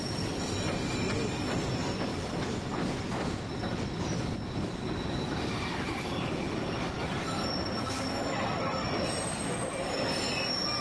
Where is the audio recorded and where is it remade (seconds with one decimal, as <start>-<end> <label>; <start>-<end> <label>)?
0.0-10.8 recorded